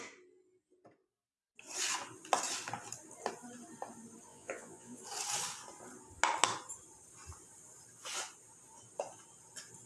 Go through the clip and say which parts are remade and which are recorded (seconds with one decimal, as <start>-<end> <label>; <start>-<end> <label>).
0.0-4.3 recorded; 4.3-5.0 remade; 5.0-9.9 recorded